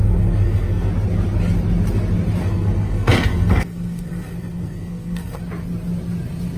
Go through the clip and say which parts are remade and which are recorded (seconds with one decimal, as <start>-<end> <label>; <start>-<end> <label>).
0.0-0.9 remade; 0.9-2.4 recorded; 2.4-5.4 remade; 5.4-6.6 recorded